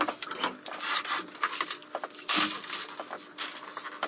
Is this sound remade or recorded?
recorded